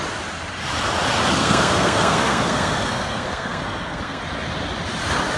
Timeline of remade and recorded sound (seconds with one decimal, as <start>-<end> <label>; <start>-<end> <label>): 0.0-1.4 recorded; 1.4-4.2 remade; 4.2-5.4 recorded